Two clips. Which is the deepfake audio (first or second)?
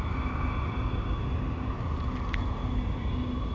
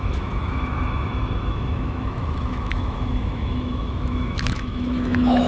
second